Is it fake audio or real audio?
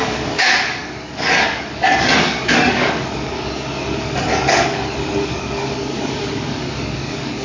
fake